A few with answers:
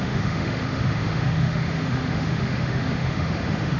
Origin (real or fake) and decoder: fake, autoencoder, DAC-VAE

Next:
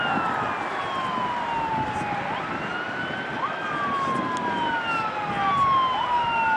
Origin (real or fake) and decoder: real